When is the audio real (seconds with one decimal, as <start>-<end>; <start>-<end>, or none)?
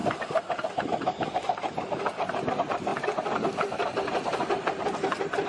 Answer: 0.0-5.5